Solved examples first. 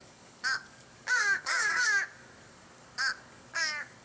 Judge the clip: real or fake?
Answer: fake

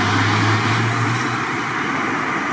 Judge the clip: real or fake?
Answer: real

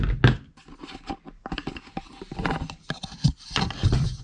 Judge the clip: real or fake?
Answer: real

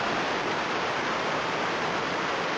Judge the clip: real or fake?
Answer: fake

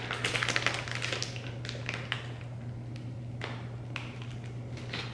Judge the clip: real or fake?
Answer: real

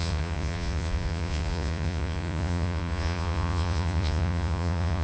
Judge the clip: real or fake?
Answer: fake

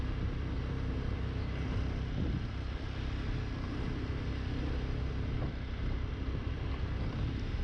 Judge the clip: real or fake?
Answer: real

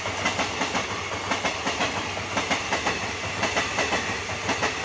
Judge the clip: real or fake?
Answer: real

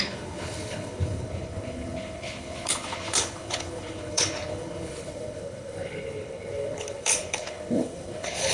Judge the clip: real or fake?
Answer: fake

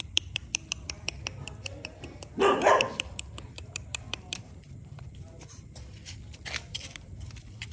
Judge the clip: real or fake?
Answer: fake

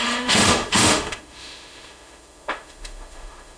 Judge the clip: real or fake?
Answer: fake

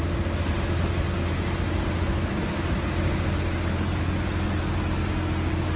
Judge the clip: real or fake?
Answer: real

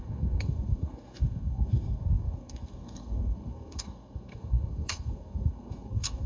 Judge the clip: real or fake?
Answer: fake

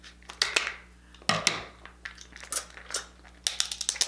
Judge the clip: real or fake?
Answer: real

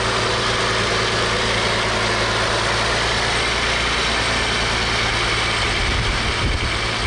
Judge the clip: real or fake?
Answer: real